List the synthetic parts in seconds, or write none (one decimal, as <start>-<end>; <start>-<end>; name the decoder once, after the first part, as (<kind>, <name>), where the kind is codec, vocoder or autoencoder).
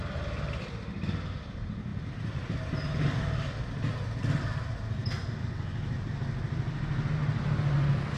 none